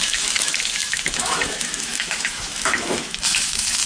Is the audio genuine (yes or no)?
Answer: no